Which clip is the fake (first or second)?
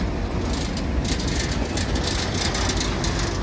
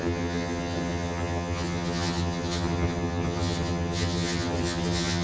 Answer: second